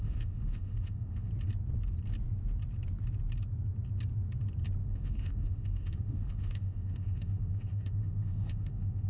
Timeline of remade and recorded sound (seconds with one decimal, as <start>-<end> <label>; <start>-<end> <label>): 0.0-1.3 remade; 1.3-4.8 recorded; 4.8-9.1 remade